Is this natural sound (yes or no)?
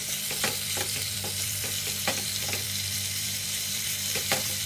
no